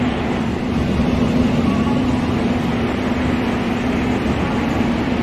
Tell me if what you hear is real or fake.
real